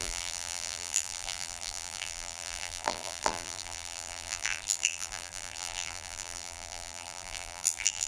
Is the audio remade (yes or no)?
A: yes